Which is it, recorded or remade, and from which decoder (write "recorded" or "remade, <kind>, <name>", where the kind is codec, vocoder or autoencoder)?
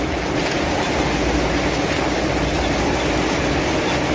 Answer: recorded